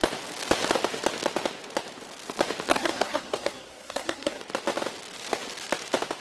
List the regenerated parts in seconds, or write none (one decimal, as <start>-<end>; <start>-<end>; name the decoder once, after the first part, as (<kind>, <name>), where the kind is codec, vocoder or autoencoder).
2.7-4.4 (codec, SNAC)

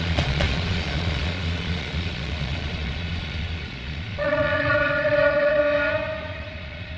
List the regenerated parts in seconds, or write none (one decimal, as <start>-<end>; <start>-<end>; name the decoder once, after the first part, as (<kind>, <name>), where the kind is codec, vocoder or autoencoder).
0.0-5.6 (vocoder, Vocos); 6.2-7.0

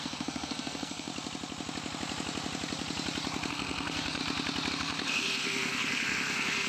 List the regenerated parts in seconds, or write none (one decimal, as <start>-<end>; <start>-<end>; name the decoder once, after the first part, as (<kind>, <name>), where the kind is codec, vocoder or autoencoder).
0.0-1.1 (codec, SNAC); 3.5-4.2; 4.7-6.7

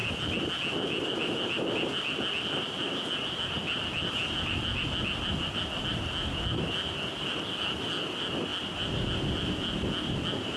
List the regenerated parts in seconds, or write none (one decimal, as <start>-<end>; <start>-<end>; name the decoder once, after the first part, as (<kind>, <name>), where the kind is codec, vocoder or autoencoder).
none

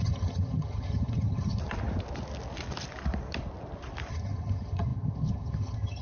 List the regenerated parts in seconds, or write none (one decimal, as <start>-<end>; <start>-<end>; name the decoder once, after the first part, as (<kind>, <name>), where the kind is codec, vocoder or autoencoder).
0.0-1.6 (vocoder, HiFi-GAN); 4.1-6.0